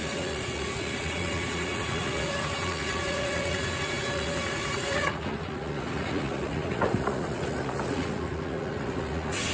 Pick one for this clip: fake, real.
fake